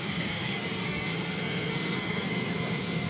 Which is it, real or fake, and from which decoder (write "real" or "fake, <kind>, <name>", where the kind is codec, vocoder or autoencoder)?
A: fake, codec, SNAC